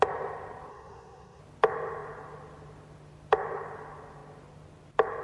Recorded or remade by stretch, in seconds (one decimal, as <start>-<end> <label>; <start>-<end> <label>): 0.0-0.7 recorded; 0.7-1.4 remade; 1.4-5.2 recorded